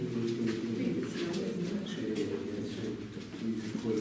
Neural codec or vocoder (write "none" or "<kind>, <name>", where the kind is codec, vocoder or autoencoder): none